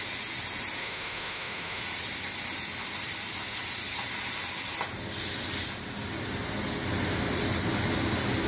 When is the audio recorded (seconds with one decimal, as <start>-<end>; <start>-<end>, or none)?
0.0-0.8; 1.8-8.5